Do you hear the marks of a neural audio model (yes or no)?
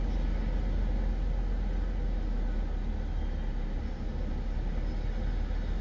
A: no